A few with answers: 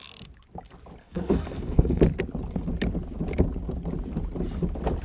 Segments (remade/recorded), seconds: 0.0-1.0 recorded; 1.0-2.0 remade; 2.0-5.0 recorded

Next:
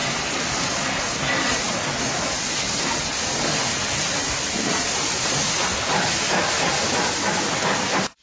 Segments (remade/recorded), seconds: 0.0-8.2 recorded

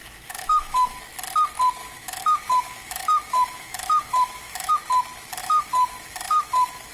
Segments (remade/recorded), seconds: 0.0-1.0 remade; 1.0-1.8 recorded; 1.8-4.7 remade; 4.7-5.4 recorded; 5.4-6.9 remade